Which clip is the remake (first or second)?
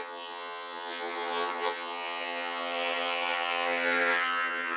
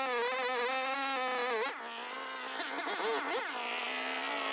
first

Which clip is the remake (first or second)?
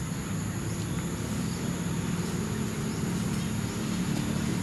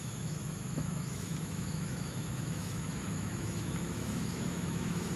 second